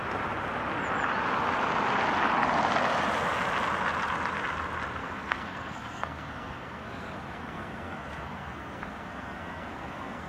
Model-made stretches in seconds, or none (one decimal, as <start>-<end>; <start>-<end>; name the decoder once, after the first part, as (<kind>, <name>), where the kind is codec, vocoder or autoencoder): 5.0-10.3 (codec, SNAC)